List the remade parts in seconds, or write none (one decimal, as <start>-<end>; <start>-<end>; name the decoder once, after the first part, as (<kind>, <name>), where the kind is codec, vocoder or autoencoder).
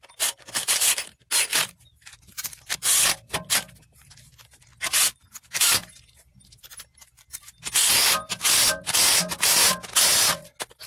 none